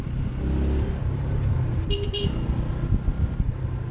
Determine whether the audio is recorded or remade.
recorded